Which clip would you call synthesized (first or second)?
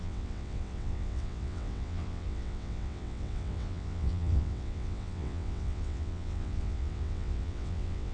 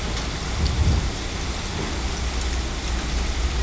first